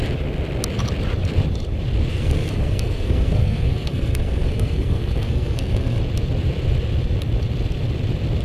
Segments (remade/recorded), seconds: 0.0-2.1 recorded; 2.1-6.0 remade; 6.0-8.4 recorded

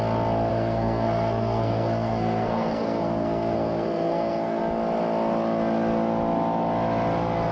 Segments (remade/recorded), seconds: 0.0-0.5 recorded; 0.5-4.6 remade; 4.6-7.5 recorded

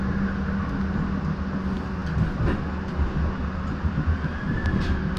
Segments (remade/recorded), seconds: 0.0-5.2 recorded

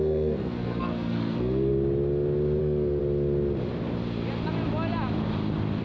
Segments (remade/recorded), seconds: 0.0-1.7 remade; 1.7-2.6 recorded; 2.6-3.0 remade; 3.0-5.8 recorded